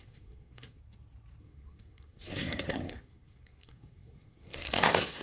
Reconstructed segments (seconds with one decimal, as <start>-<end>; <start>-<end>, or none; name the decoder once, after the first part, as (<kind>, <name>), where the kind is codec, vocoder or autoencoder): 0.0-0.8 (codec, SNAC); 1.4-5.2

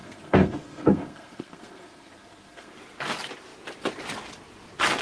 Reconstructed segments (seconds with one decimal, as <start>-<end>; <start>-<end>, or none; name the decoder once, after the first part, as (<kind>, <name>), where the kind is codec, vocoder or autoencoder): 0.0-2.7 (codec, SNAC)